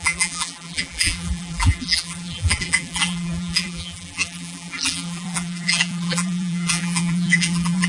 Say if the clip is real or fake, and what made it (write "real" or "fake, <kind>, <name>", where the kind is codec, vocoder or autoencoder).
fake, vocoder, BigVGAN v2